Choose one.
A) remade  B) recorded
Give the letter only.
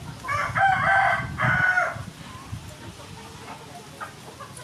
B